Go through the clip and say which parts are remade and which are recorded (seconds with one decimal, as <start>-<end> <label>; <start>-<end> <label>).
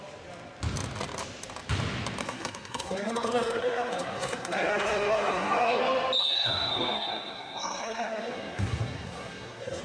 0.0-2.2 recorded; 2.2-5.8 remade; 5.8-6.2 recorded; 6.2-9.8 remade